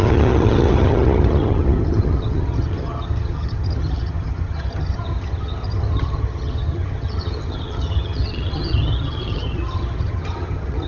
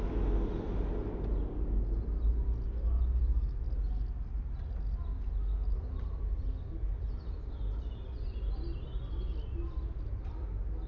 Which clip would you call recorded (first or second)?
second